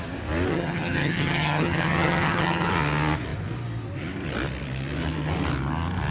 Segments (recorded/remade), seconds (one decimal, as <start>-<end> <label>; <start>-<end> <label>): 0.0-0.5 recorded; 0.5-2.7 remade; 2.7-6.1 recorded